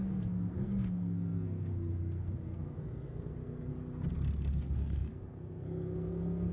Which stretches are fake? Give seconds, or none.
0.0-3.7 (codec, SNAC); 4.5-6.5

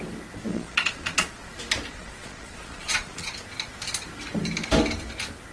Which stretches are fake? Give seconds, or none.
0.5-1.4 (vocoder, Vocos); 1.9-3.3

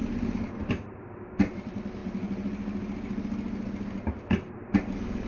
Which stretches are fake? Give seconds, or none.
0.7-2.0 (vocoder, BigVGAN v2)

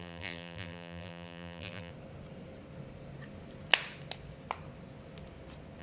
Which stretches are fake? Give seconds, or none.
0.0-1.9 (vocoder, BigVGAN v2)

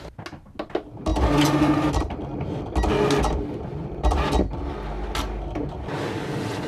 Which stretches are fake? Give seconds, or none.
none

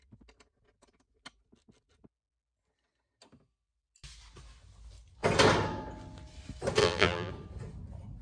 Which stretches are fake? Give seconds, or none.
6.8-7.3 (vocoder, BigVGAN v2)

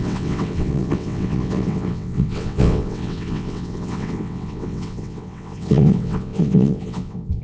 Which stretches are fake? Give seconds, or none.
0.0-7.4 (vocoder, WaveNeXt)